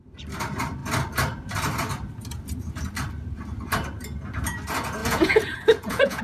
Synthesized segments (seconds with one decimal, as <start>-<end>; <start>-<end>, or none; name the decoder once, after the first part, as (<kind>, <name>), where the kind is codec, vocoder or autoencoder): 5.0-6.2 (vocoder, Vocos)

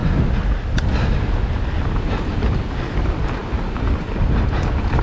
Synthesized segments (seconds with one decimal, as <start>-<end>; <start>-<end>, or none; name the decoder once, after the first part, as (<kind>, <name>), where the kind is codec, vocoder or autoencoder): none

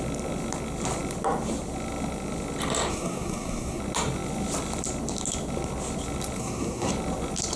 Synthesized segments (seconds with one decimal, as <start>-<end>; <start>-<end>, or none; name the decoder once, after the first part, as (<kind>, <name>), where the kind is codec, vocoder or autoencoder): 2.9-3.8 (codec, SNAC); 6.4-6.9

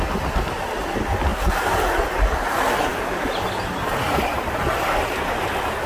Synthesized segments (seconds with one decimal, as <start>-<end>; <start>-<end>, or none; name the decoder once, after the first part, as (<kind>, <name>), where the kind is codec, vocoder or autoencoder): 2.9-3.8 (vocoder, BigVGAN v2)

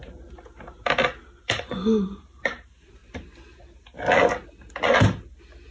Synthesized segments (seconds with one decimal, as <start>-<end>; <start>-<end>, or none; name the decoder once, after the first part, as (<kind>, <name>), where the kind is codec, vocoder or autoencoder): 1.4-3.0 (vocoder, BigVGAN v2)

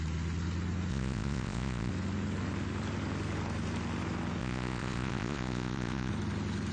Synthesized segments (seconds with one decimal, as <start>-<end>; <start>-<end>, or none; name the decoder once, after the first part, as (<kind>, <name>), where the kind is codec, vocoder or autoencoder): 0.9-1.9 (vocoder, Vocos); 4.4-6.1

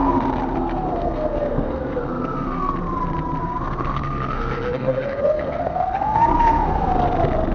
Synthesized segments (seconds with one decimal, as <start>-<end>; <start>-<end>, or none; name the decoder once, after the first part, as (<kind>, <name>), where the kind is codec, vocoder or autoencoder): 0.0-2.7 (codec, SNAC); 3.4-6.9